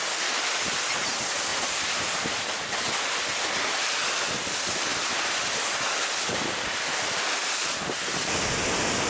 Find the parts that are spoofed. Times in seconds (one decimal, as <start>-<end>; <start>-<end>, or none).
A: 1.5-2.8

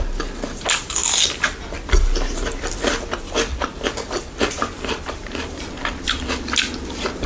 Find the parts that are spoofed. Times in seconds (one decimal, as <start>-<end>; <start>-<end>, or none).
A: none

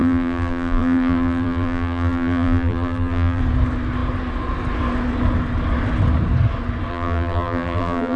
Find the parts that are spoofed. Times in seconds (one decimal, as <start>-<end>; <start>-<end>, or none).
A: 0.0-3.4; 6.9-8.2